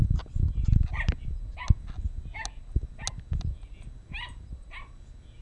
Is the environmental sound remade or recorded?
recorded